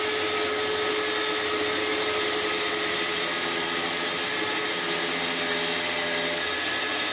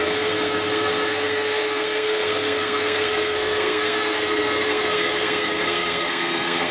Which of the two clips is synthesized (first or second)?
second